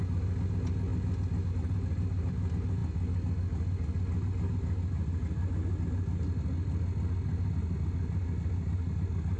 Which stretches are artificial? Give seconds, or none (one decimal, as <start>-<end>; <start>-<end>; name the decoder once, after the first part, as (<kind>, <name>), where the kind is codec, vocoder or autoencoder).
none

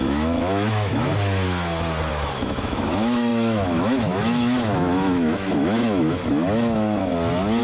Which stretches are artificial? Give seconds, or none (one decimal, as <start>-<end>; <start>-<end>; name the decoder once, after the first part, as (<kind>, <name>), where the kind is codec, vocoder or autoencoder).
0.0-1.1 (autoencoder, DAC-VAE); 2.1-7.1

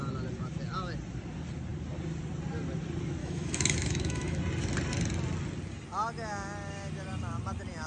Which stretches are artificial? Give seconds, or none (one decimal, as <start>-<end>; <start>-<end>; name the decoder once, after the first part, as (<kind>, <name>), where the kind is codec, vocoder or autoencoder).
3.2-4.4 (autoencoder, DAC-VAE)